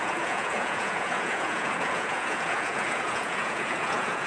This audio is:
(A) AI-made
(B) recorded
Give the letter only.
A